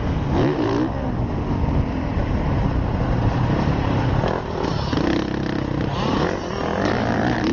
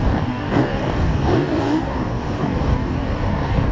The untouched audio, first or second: first